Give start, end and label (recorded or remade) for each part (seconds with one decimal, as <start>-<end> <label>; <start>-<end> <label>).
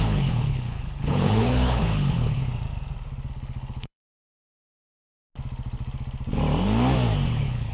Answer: 0.0-2.4 remade; 2.4-3.3 recorded; 3.3-4.8 remade; 4.8-7.3 recorded; 7.3-7.7 remade